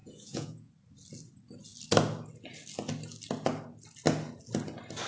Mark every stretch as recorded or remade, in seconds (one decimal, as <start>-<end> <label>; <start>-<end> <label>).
0.0-0.7 remade; 0.7-5.1 recorded